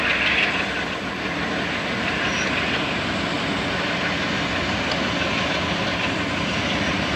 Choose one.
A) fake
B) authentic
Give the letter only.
B